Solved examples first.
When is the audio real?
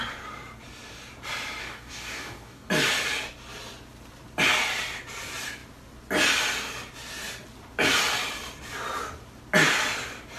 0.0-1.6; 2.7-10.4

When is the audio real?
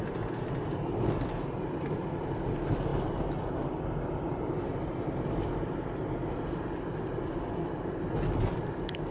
0.0-9.1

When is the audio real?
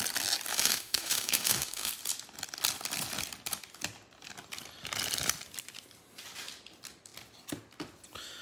0.0-0.5; 1.9-8.4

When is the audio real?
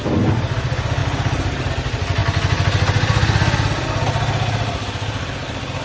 0.0-1.0; 1.7-5.8